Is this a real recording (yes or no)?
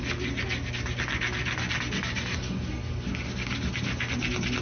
yes